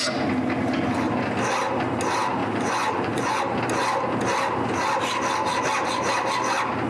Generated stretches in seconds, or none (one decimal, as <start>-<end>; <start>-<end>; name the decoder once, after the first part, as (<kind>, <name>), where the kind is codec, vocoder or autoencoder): 2.4-3.4 (vocoder, Vocos)